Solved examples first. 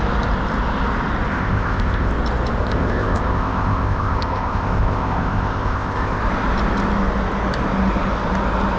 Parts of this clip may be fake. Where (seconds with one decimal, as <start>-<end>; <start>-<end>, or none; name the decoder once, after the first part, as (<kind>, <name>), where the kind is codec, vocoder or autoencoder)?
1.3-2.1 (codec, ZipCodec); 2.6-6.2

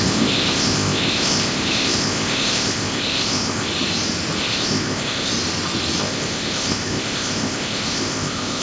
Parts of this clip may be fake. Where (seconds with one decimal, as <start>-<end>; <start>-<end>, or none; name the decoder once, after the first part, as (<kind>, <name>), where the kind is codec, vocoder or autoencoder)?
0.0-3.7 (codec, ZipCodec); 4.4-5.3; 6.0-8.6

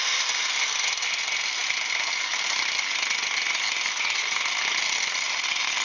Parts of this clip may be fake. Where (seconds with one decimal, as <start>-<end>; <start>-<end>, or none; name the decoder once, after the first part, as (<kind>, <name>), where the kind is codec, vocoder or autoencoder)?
none

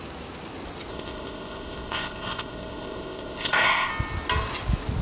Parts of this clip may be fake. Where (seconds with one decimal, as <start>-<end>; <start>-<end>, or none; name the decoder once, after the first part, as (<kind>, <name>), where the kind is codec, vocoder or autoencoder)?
0.9-3.9 (codec, ZipCodec)